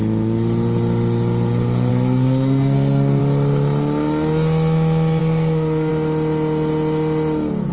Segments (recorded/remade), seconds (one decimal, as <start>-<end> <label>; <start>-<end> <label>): 0.0-1.9 recorded; 1.9-3.2 remade; 3.2-5.2 recorded; 5.2-5.9 remade; 5.9-7.7 recorded